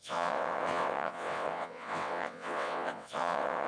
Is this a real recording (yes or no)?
no